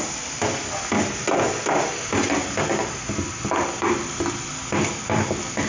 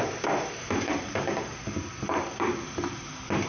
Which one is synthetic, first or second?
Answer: second